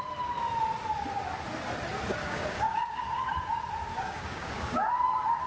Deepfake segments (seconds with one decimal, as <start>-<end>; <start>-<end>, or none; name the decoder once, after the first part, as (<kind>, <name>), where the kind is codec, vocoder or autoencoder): 2.2-3.2 (codec, DAC); 3.9-5.0